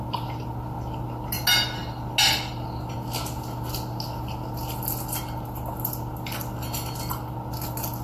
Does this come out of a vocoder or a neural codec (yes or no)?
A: no